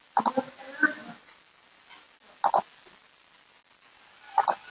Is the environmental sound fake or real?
real